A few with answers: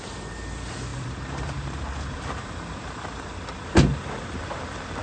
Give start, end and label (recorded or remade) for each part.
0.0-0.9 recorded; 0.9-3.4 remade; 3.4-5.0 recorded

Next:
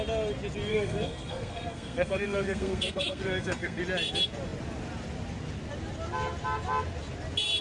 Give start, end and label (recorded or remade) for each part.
0.0-0.7 recorded; 0.7-3.8 remade; 3.8-7.6 recorded

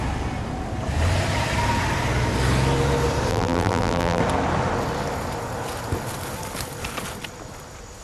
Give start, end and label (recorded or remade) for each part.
0.0-3.3 recorded; 3.3-4.2 remade; 4.2-8.0 recorded

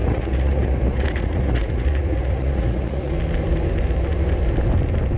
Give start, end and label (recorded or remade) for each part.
0.0-3.1 remade; 3.1-5.2 recorded